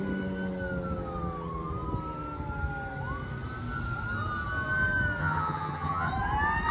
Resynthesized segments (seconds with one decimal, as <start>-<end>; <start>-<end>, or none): 5.2-6.1